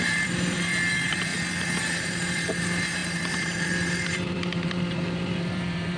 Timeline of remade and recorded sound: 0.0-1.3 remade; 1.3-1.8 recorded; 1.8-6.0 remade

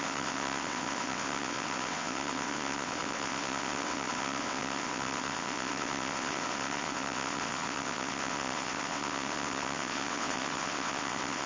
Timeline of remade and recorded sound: 0.0-11.5 remade

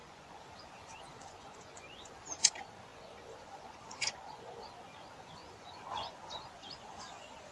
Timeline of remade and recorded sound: 0.0-7.5 remade

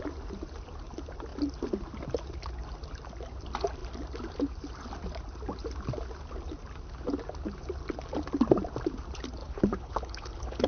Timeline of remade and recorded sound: 0.0-9.4 recorded; 9.4-10.7 remade

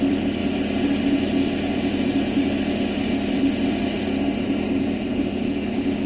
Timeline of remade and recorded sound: 0.0-6.1 recorded

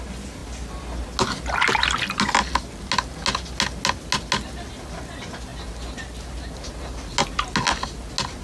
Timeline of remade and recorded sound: 0.0-8.4 recorded